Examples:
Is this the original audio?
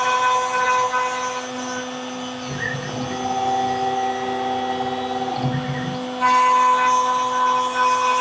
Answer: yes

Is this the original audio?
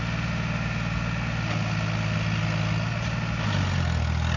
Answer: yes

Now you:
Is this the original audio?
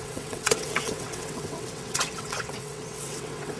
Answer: no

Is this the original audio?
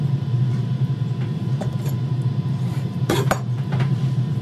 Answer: no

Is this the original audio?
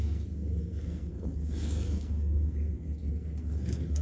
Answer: no